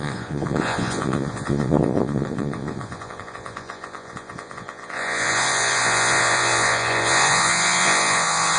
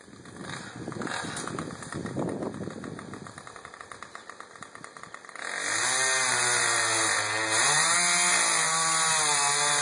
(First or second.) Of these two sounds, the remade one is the first